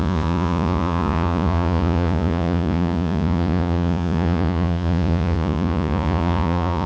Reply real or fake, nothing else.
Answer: fake